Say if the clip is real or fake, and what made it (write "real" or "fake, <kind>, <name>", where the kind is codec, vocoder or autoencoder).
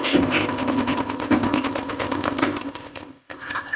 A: fake, codec, ZipCodec